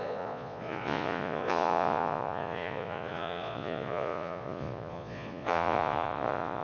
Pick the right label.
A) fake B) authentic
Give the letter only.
A